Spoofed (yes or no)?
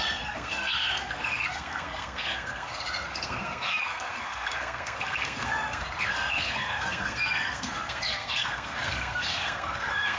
yes